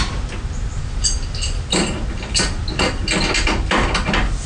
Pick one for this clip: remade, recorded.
recorded